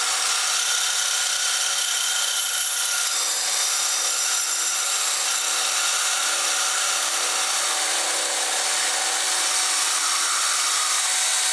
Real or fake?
real